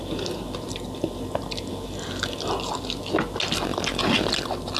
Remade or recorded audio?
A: recorded